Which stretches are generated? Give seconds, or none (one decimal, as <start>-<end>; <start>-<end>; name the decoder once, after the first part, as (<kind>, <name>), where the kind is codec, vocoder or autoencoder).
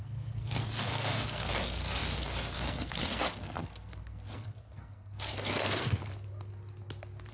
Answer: 0.0-6.0 (codec, SNAC)